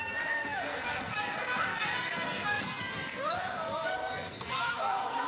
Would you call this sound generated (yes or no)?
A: yes